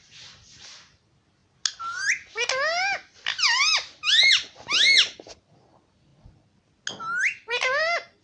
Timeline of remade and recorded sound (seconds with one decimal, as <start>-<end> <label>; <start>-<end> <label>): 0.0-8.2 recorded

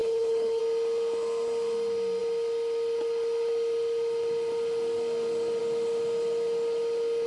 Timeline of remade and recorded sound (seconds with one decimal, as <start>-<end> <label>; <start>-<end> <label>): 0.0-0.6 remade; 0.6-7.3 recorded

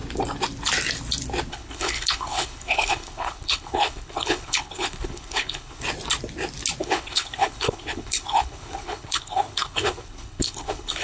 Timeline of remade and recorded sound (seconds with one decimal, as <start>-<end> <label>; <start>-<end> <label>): 0.0-1.5 recorded; 1.5-5.8 remade; 5.8-6.8 recorded; 6.8-11.0 remade